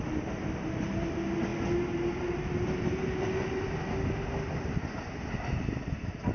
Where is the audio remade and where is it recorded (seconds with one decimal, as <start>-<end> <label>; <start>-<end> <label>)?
0.0-6.3 recorded